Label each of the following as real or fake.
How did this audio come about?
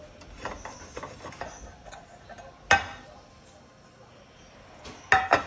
real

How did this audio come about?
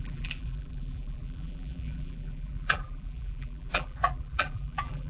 fake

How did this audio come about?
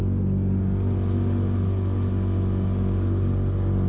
real